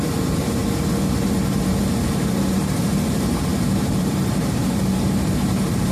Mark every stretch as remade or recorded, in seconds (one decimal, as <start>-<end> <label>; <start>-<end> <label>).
0.0-0.6 remade; 0.6-1.2 recorded; 1.2-5.9 remade